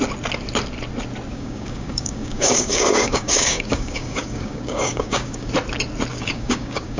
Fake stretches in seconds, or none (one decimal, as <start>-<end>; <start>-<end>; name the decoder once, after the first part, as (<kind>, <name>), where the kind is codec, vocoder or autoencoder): 1.3-5.5 (codec, DAC); 6.1-7.0